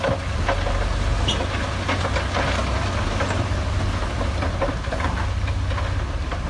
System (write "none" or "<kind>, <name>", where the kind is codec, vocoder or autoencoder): none